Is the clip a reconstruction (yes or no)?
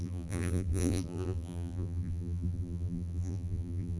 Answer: yes